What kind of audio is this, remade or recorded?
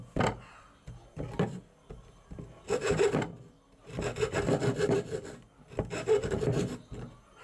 recorded